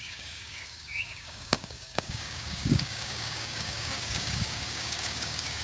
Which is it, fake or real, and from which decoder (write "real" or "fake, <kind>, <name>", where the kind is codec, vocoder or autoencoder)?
fake, codec, DAC